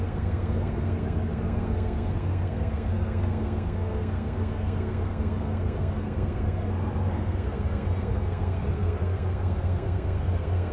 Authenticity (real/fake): fake